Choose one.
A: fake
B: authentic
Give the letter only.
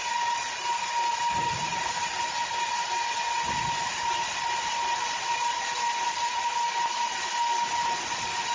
B